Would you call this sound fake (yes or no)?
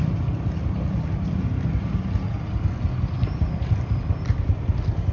no